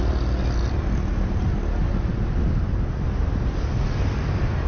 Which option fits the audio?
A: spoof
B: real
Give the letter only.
B